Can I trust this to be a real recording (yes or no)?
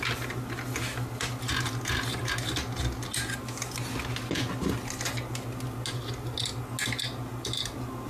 yes